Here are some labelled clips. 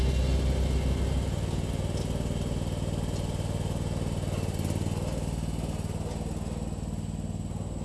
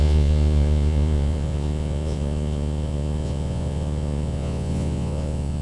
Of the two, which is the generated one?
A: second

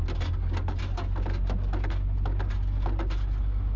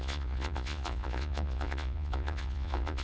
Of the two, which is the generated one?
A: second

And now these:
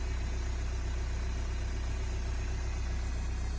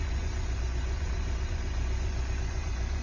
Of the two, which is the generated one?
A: second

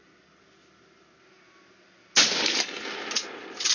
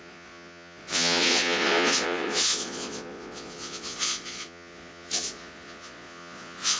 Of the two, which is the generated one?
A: second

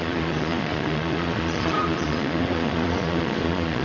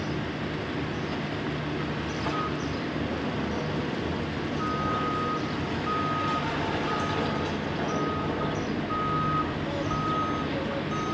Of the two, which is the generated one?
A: first